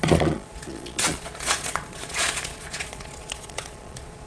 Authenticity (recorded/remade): remade